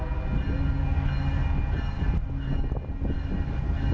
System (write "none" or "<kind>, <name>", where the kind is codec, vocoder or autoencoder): none